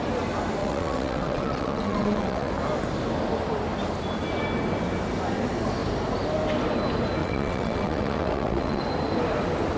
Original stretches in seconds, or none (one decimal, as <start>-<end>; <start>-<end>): 0.0-0.6; 2.5-7.2; 8.8-9.8